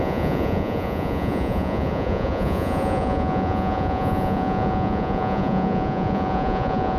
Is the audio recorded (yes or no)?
no